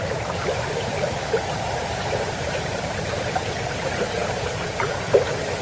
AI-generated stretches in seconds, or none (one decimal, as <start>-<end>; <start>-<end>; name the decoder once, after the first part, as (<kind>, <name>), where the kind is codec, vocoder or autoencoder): 0.0-3.4 (vocoder, BigVGAN v2)